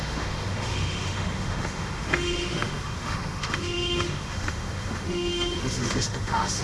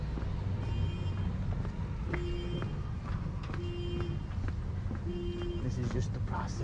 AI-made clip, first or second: first